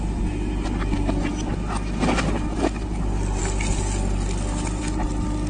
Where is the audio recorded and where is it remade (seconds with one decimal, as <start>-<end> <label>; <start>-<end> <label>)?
0.0-5.5 recorded